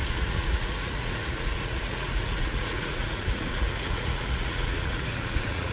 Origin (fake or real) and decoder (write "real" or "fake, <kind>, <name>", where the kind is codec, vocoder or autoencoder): fake, vocoder, Vocos